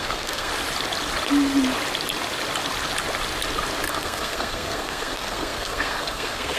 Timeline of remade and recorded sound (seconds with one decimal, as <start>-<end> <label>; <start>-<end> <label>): 0.0-0.5 remade; 0.5-3.9 recorded; 3.9-6.6 remade